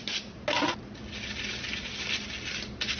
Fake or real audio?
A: real